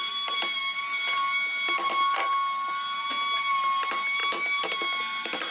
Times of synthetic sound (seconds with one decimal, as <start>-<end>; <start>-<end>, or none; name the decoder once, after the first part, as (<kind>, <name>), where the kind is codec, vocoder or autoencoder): none